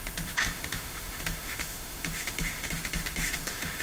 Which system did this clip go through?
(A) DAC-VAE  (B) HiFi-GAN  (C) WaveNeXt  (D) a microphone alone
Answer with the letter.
A